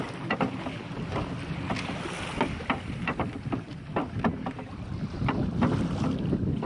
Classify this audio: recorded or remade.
recorded